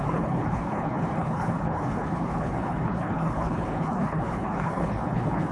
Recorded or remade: remade